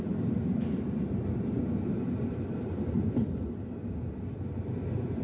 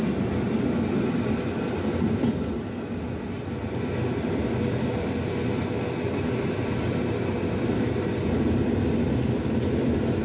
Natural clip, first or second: second